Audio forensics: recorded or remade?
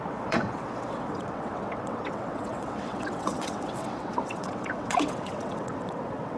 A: remade